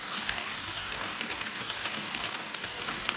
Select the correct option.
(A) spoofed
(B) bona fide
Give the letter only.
A